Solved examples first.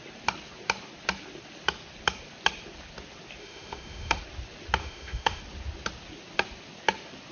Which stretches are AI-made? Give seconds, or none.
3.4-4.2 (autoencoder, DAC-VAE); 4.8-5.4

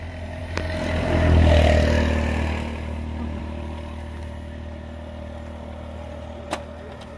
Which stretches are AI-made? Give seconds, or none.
none

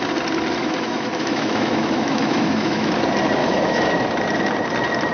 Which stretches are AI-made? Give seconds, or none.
0.6-2.9 (autoencoder, DAC-VAE); 3.4-3.9

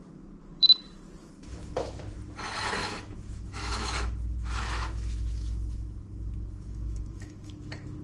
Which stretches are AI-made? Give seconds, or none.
1.2-2.0 (autoencoder, DAC-VAE); 2.8-7.6